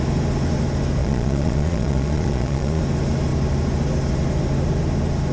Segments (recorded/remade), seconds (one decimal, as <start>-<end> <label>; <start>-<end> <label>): 0.0-1.0 recorded; 1.0-2.8 remade; 2.8-5.3 recorded